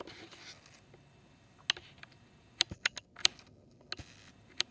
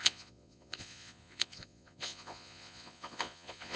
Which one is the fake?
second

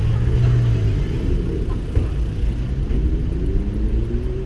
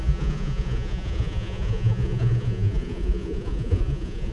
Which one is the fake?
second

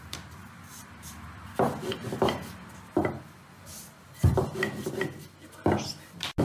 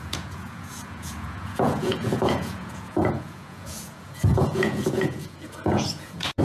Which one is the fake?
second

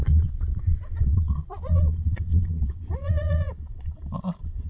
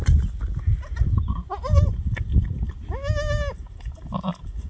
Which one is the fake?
first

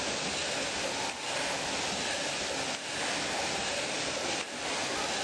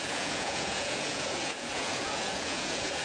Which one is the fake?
second